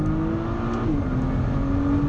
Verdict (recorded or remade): recorded